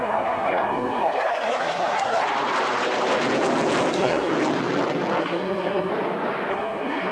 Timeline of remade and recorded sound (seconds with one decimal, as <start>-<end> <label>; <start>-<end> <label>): 0.0-2.2 remade; 2.2-3.9 recorded; 3.9-4.3 remade; 4.3-5.2 recorded; 5.2-5.9 remade; 5.9-6.5 recorded; 6.5-7.1 remade